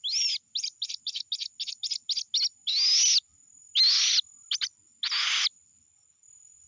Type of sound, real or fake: real